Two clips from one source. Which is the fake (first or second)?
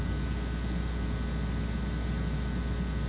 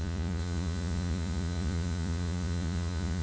second